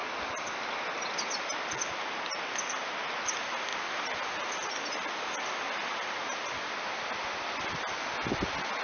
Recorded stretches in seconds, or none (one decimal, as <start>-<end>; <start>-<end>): 0.0-8.8